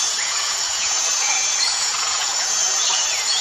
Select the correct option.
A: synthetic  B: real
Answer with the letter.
A